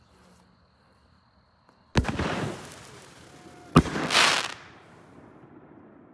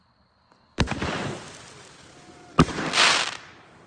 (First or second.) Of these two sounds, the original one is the first